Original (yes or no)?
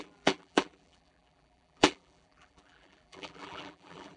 no